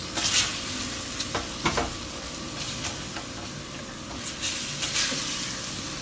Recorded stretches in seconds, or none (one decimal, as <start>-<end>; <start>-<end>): 0.0-6.0